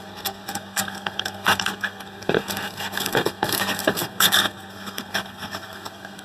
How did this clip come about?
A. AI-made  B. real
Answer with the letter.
A